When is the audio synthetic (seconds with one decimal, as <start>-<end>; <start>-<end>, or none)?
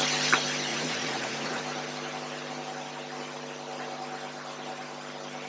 0.7-1.6